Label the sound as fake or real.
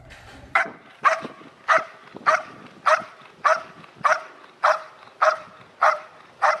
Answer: fake